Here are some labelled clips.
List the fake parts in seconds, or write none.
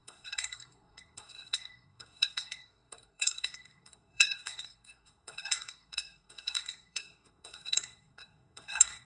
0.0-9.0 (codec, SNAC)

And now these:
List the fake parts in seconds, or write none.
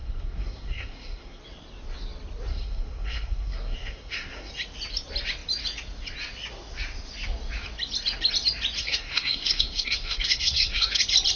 0.0-1.4 (codec, SNAC); 2.5-4.5; 8.8-11.0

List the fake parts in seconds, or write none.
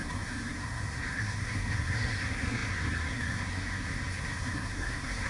0.0-5.3 (codec, SNAC)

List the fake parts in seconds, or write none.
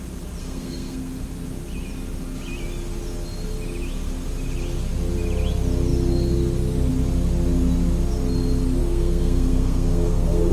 0.4-1.3 (codec, SNAC); 8.8-10.5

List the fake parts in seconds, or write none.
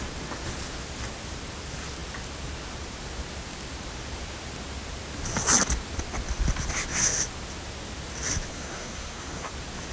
8.5-9.5 (codec, SNAC)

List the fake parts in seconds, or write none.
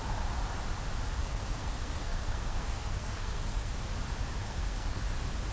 1.2-3.7 (codec, SNAC); 4.4-5.0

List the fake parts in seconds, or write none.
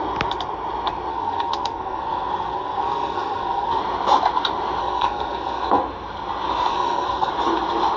1.1-3.8 (codec, SNAC); 4.8-5.8; 6.7-7.3